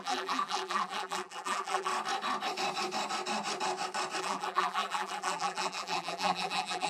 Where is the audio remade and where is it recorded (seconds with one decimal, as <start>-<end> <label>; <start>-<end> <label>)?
0.0-1.9 remade; 1.9-4.2 recorded; 4.2-6.9 remade